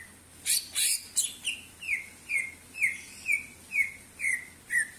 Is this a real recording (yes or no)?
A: yes